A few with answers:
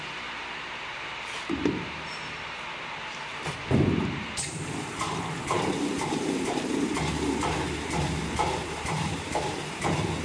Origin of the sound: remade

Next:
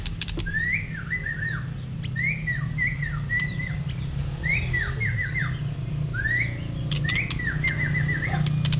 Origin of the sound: recorded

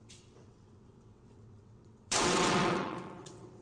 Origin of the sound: remade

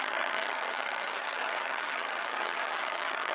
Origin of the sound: remade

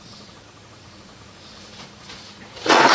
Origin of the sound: remade